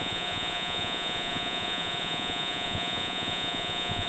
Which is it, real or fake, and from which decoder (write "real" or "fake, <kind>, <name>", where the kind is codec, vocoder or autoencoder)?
fake, vocoder, Vocos